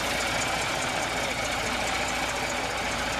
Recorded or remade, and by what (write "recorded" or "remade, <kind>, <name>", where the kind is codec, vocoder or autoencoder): recorded